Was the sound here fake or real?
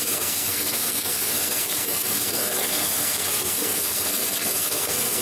fake